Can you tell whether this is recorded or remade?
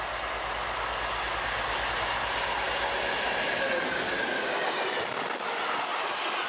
recorded